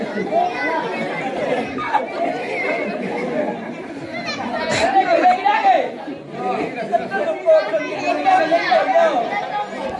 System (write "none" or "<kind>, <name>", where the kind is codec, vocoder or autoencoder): none